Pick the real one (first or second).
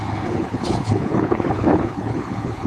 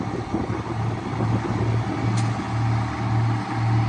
second